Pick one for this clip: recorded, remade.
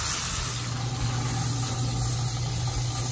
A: recorded